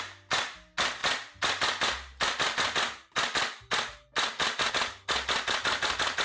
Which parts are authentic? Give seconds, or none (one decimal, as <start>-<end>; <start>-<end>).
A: 0.0-6.2